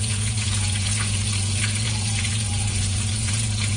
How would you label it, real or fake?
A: fake